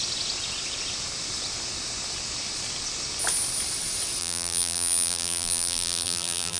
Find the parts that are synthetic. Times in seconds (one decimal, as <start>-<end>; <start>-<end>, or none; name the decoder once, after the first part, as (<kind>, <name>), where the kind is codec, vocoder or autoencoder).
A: 4.2-6.6 (vocoder, BigVGAN v2)